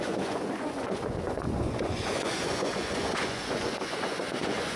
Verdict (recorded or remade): remade